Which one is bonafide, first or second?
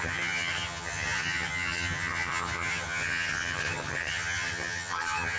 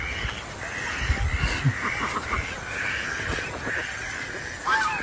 second